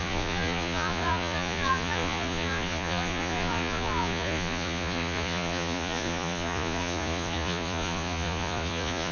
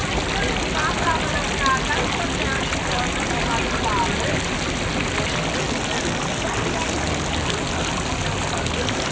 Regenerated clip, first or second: first